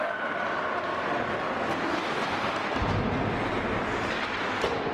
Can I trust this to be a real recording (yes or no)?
yes